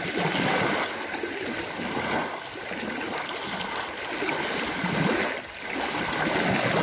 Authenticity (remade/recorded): recorded